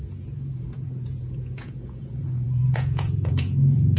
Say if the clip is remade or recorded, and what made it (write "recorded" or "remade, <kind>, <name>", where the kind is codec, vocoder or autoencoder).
remade, vocoder, Vocos